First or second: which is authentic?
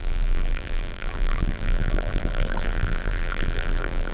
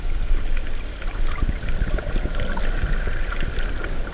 second